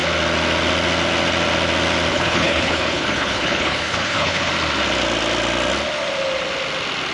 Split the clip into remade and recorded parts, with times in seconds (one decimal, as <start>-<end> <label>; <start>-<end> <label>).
0.0-2.1 recorded; 2.1-4.5 remade; 4.5-7.1 recorded